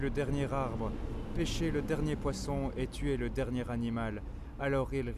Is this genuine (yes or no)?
yes